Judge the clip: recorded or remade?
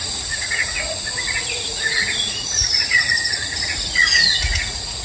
remade